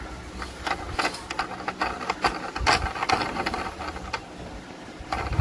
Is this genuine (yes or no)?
yes